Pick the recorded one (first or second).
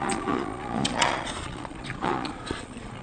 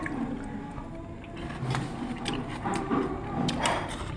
second